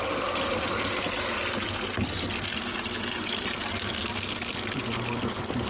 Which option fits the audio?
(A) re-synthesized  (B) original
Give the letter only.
B